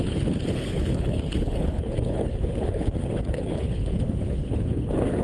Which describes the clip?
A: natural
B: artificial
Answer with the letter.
B